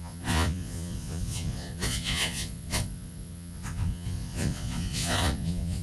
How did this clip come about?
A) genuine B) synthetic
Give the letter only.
B